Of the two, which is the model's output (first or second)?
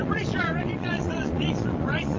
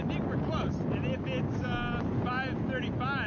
first